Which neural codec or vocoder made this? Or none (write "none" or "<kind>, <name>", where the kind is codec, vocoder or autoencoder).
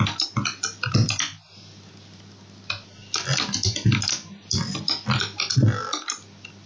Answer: none